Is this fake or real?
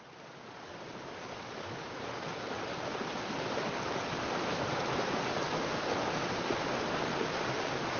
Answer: real